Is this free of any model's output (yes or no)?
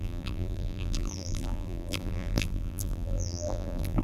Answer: no